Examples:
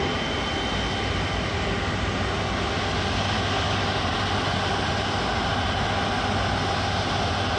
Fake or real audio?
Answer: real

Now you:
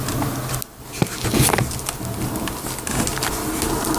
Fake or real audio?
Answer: real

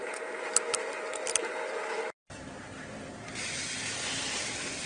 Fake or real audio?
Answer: fake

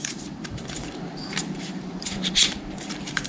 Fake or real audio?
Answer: fake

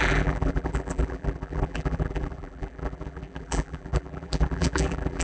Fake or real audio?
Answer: fake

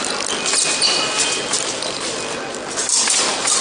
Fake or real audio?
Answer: real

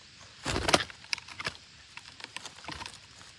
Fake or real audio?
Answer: fake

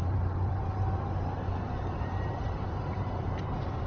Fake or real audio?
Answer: fake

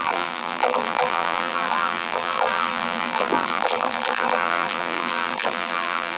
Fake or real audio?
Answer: fake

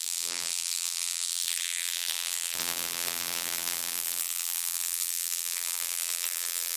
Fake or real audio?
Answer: fake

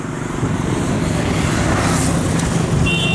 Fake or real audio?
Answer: real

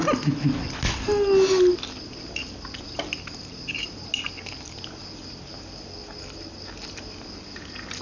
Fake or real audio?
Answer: real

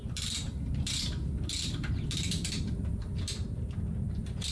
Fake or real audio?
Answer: fake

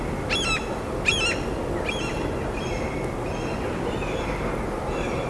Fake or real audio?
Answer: real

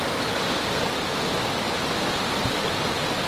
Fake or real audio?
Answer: real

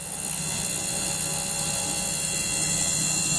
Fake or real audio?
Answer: real